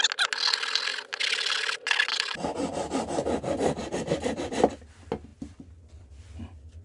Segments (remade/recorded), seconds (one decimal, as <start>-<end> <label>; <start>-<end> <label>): 0.0-0.9 recorded; 0.9-1.6 remade; 1.6-2.1 recorded; 2.1-4.8 remade; 4.8-6.8 recorded